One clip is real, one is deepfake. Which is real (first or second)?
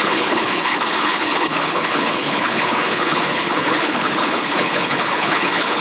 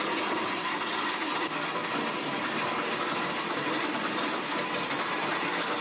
second